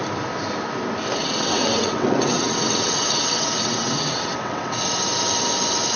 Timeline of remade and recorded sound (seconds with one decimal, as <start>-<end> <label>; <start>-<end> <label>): 0.0-1.2 recorded; 1.2-4.8 remade; 4.8-6.0 recorded